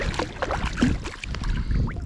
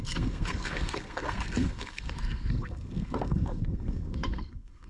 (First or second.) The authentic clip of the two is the first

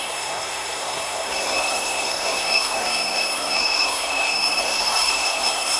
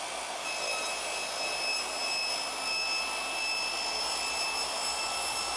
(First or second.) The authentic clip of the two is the second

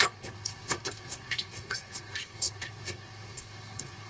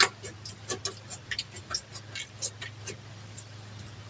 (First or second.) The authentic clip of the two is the second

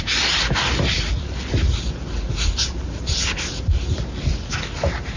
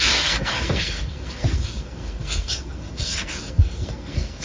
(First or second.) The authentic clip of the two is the first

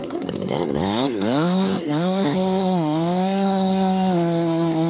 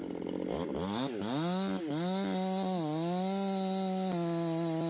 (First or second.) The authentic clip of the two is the second